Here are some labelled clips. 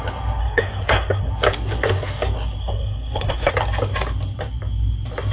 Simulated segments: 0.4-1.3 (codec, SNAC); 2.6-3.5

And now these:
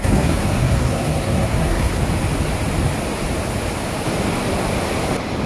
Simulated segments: 0.0-2.0 (codec, SNAC)

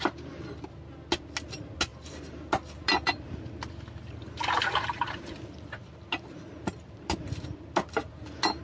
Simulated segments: none

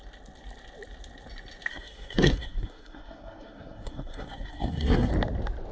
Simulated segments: 1.7-5.1 (codec, SNAC)

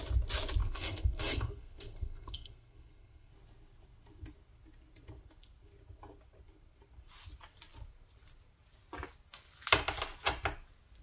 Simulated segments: 0.6-3.3 (codec, SNAC)